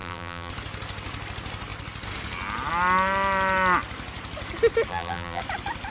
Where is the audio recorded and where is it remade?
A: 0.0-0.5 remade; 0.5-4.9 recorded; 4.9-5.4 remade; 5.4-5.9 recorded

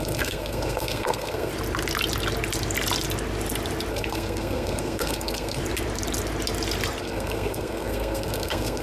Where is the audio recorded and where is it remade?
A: 0.0-1.5 remade; 1.5-3.9 recorded; 3.9-5.6 remade; 5.6-7.0 recorded; 7.0-8.8 remade

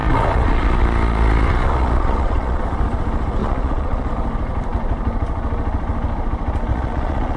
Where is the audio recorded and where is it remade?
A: 0.0-2.6 remade; 2.6-3.4 recorded; 3.4-4.1 remade; 4.1-6.7 recorded; 6.7-7.4 remade

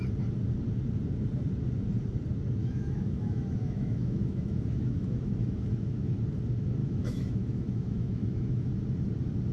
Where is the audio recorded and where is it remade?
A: 0.0-2.6 recorded; 2.6-6.1 remade; 6.1-6.8 recorded; 6.8-8.7 remade; 8.7-9.5 recorded

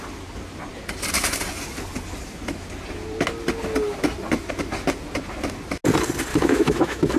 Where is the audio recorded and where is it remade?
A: 0.0-6.3 recorded; 6.3-7.2 remade

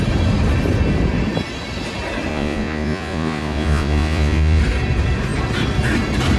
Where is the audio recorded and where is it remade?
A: 0.0-2.3 recorded; 2.3-4.6 remade; 4.6-6.4 recorded